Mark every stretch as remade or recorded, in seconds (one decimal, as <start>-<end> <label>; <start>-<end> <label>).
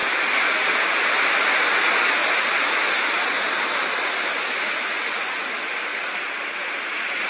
0.0-2.2 recorded; 2.2-3.1 remade; 3.1-5.9 recorded; 5.9-6.4 remade; 6.4-7.3 recorded